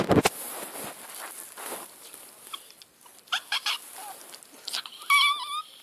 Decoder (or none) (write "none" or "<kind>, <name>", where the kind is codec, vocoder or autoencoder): none